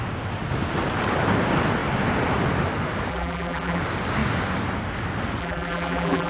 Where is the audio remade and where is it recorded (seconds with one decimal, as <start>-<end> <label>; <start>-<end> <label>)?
0.0-3.1 recorded; 3.1-3.8 remade; 3.8-5.4 recorded; 5.4-6.3 remade